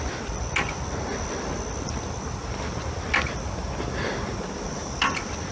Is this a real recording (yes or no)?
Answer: yes